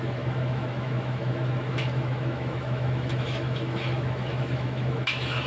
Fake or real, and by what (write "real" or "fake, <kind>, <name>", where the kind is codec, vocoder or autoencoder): fake, autoencoder, DAC-VAE